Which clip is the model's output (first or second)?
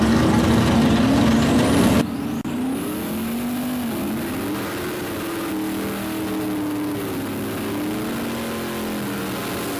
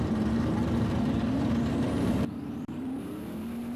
second